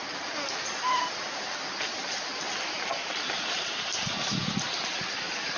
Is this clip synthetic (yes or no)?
no